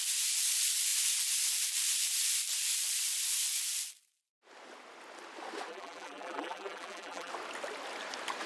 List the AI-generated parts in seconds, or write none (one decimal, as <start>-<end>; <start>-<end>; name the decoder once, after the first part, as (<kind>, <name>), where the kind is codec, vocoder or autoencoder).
5.7-7.3 (vocoder, BigVGAN v2)